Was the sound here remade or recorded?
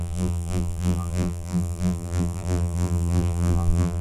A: remade